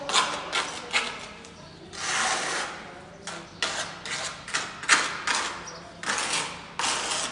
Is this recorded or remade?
recorded